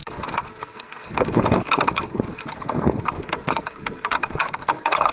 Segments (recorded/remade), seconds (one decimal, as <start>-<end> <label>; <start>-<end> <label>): 0.0-5.1 remade